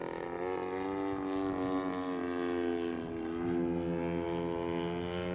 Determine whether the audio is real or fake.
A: real